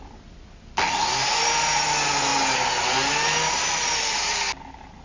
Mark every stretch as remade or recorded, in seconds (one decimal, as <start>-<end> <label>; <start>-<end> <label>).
0.0-5.0 recorded